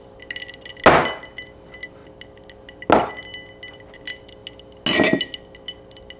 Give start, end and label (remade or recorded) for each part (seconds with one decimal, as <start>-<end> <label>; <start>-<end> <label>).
0.0-6.2 recorded